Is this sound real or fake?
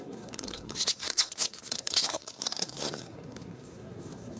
fake